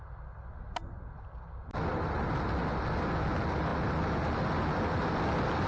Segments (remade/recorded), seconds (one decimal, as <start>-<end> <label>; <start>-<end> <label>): 0.0-5.7 recorded